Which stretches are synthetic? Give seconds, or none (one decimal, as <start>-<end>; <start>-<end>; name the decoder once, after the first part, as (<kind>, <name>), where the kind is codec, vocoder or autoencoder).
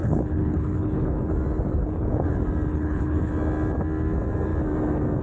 0.0-1.3 (codec, HILCodec); 1.8-2.3; 2.7-3.3